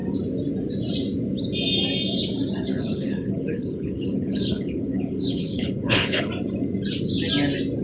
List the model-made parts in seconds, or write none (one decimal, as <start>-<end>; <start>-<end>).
2.7-6.3